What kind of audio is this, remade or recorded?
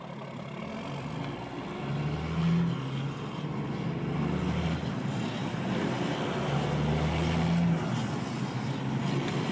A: recorded